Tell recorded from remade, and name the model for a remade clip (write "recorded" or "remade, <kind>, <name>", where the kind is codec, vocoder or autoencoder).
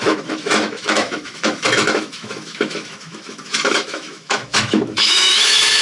remade, autoencoder, DAC-VAE